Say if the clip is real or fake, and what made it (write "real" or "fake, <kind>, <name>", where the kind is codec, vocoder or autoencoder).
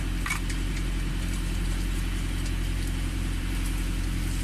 fake, vocoder, BigVGAN v2